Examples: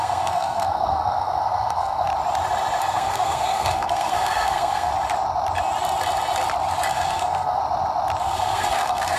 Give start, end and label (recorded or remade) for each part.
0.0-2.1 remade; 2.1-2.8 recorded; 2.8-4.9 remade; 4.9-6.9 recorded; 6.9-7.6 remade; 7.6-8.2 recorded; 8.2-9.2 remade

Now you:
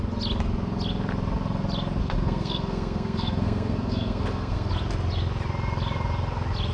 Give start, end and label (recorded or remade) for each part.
0.0-2.0 recorded; 2.0-4.7 remade; 4.7-6.7 recorded

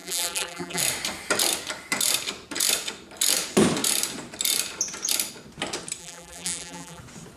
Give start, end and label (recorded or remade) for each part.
0.0-0.8 remade; 0.8-6.0 recorded; 6.0-7.0 remade; 7.0-7.4 recorded

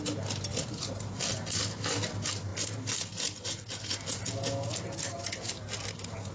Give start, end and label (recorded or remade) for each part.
0.0-6.3 recorded

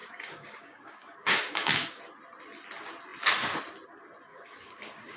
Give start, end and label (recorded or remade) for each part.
0.0-2.0 remade; 2.0-4.3 recorded; 4.3-5.2 remade

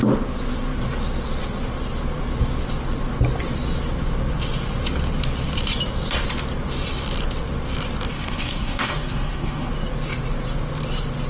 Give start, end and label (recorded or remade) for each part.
0.0-8.1 recorded; 8.1-9.7 remade; 9.7-11.3 recorded

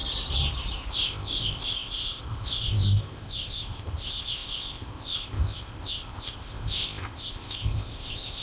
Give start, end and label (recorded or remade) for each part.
0.0-0.9 recorded; 0.9-8.4 remade

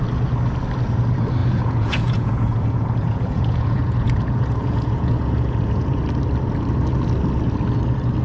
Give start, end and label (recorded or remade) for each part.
0.0-1.4 recorded; 1.4-6.0 remade; 6.0-8.2 recorded